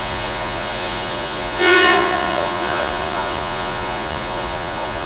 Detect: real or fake fake